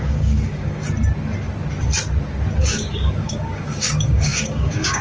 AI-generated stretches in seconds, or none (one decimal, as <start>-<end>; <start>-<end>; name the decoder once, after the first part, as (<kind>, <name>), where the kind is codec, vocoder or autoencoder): 0.0-0.8 (codec, DAC); 2.6-5.0